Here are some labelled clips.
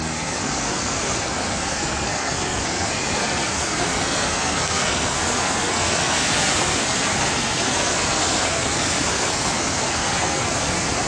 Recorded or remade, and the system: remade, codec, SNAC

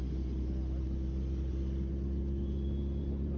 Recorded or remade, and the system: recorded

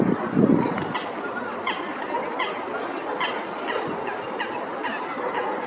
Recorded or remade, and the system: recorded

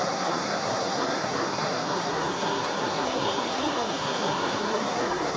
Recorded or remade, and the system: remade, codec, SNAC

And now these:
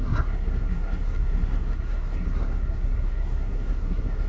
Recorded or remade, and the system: remade, codec, SNAC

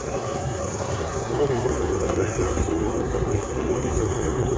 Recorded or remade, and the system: remade, codec, SNAC